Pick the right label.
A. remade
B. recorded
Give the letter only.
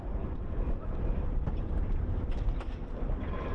B